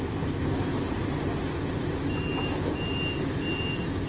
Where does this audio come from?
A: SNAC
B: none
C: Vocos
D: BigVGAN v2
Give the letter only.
D